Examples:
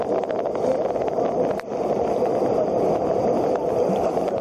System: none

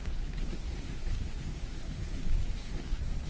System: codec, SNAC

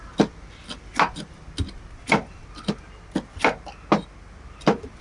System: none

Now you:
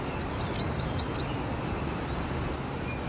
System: none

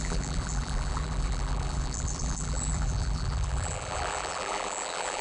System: vocoder, BigVGAN v2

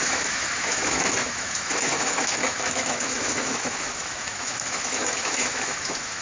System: autoencoder, DAC-VAE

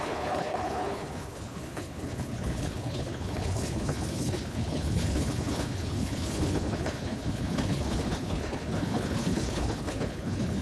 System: codec, HILCodec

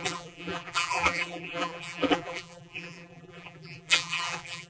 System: vocoder, BigVGAN v2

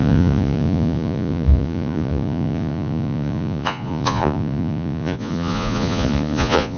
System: vocoder, Vocos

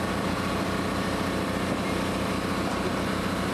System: none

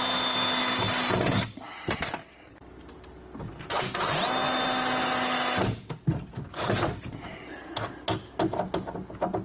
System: none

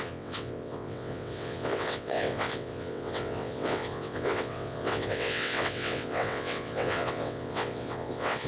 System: vocoder, WaveNeXt